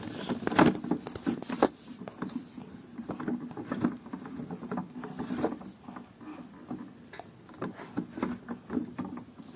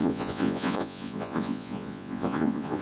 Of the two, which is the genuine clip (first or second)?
first